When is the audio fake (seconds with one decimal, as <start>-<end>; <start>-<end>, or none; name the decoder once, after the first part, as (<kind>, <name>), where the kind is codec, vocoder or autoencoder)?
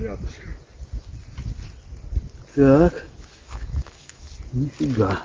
3.0-4.3 (autoencoder, DAC-VAE)